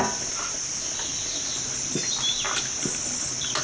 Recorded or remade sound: recorded